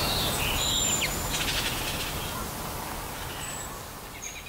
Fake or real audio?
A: real